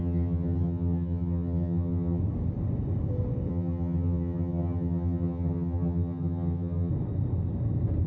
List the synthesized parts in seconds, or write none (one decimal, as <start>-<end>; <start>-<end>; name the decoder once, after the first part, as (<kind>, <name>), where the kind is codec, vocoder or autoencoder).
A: 0.0-2.2 (vocoder, HiFi-GAN); 3.5-6.9

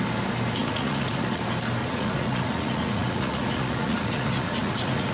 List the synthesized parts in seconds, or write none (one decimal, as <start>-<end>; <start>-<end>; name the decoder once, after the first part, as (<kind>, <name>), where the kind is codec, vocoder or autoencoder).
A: 0.6-1.4 (vocoder, Vocos); 1.8-5.1

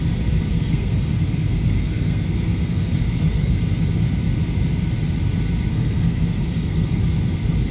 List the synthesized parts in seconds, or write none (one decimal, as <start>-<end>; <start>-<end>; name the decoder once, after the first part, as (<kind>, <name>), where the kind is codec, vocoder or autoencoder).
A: 0.5-3.6 (codec, SNAC); 5.7-7.0

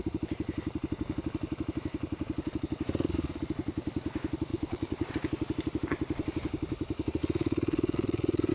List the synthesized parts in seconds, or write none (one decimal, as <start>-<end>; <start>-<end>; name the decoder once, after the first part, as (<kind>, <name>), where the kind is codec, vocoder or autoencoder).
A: 4.5-5.1 (vocoder, WaveNeXt); 7.2-8.5